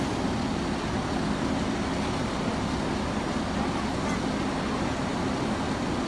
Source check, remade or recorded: recorded